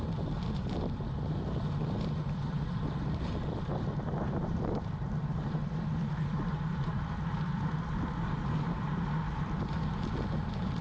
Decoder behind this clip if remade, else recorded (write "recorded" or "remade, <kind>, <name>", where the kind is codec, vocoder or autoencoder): remade, vocoder, BigVGAN v2